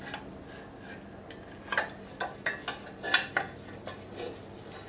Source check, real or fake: real